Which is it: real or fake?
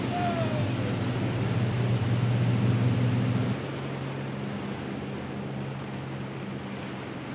real